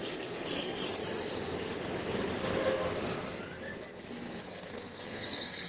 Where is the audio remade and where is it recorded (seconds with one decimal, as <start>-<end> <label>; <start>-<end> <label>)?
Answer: 0.0-1.0 remade; 1.0-4.4 recorded; 4.4-5.7 remade